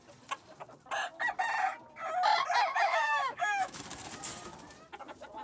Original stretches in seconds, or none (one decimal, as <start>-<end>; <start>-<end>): 0.0-2.7; 3.8-5.4